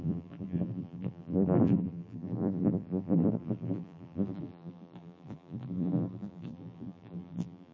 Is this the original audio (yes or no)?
no